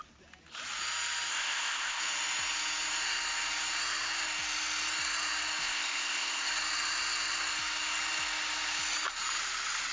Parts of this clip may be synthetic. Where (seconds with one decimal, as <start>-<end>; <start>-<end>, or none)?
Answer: 1.3-2.0; 5.6-6.5